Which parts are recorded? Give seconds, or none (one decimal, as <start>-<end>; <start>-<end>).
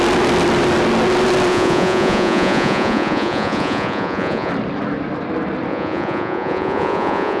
0.0-1.5; 4.5-5.7